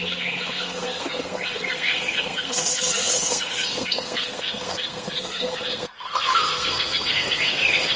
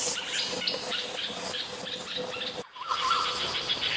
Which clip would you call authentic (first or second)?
second